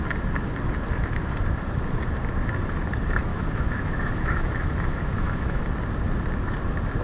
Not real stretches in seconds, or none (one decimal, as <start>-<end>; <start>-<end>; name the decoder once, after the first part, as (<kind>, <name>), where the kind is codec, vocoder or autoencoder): 3.3-5.6 (autoencoder, DAC-VAE)